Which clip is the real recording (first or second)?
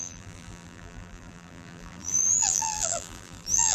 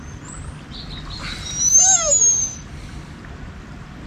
second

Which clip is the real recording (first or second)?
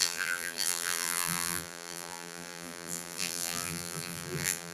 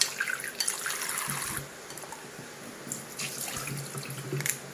second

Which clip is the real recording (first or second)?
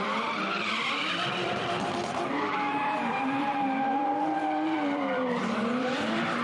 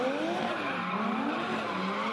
second